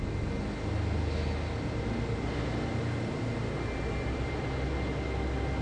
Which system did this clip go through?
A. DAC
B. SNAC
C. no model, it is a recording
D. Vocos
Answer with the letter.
C